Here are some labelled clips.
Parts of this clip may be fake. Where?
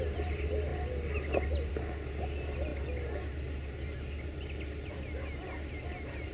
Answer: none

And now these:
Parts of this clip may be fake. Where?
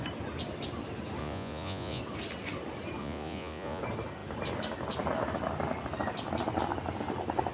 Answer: 1.2-2.0 (vocoder, Vocos); 3.0-3.8